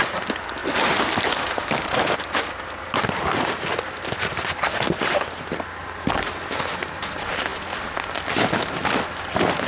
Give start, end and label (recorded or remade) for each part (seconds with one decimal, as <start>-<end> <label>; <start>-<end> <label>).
0.0-0.6 recorded; 0.6-2.1 remade; 2.1-9.7 recorded